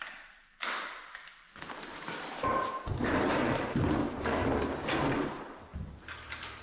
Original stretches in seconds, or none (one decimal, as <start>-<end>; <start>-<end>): 4.4-5.2